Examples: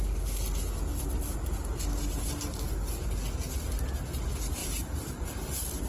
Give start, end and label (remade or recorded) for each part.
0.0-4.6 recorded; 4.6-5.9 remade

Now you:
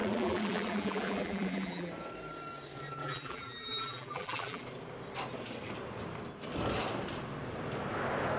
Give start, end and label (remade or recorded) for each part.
0.0-1.9 remade; 1.9-3.0 recorded; 3.0-4.6 remade; 4.6-8.4 recorded